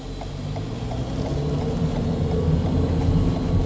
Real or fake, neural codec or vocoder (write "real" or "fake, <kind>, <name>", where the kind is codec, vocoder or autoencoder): real